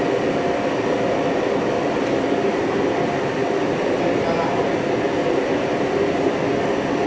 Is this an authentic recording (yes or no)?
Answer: yes